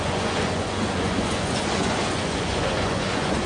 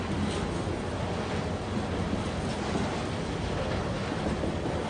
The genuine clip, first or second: second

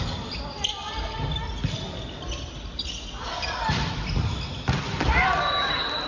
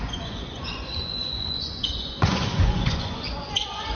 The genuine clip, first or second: first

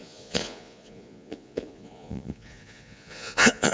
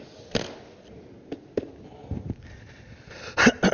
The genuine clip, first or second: second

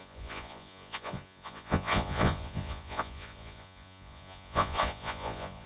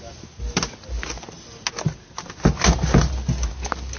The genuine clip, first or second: second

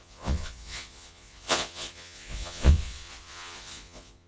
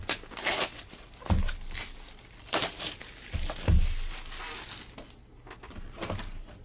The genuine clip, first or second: second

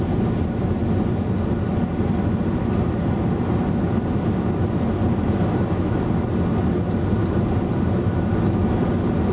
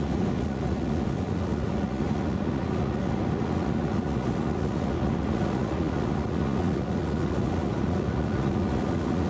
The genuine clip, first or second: first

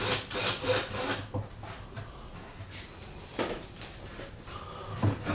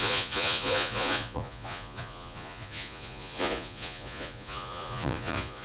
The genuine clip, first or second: first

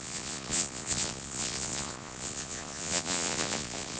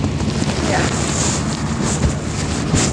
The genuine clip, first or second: second